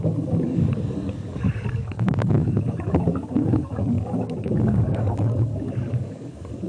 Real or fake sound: fake